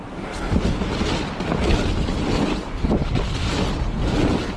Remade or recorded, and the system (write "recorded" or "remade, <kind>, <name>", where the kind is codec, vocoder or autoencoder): recorded